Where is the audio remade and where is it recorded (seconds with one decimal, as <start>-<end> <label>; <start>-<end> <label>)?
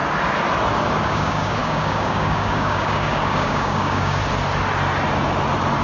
0.0-1.0 recorded; 1.0-4.2 remade; 4.2-5.8 recorded